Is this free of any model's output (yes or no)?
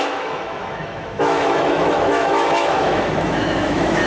no